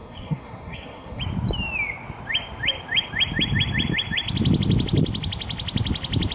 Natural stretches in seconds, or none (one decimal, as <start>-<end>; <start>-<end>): 1.2-6.3